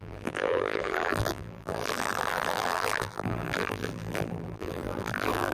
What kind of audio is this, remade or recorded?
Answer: remade